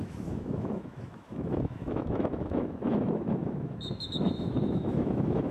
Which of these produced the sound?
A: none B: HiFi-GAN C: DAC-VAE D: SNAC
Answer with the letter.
C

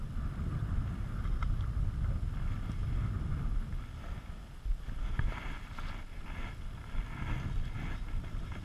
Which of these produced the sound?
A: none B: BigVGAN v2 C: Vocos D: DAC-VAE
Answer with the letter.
A